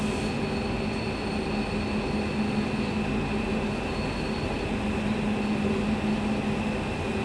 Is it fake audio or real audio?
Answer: real